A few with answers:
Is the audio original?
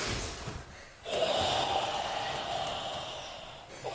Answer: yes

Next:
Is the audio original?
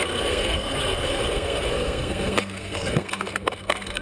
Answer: no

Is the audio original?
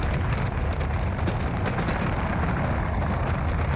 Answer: yes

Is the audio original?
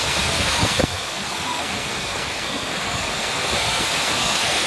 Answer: no